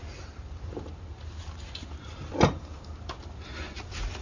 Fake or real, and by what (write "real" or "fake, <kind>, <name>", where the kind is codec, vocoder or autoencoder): real